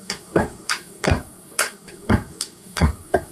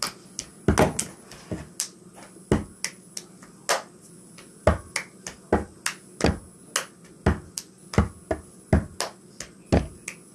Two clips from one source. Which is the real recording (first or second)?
second